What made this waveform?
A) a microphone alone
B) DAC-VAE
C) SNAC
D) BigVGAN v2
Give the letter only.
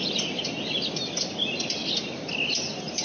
A